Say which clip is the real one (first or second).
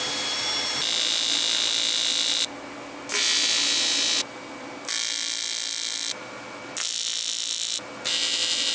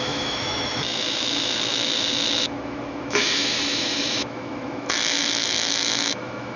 first